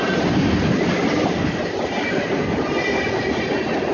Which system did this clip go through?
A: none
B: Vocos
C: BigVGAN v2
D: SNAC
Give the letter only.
A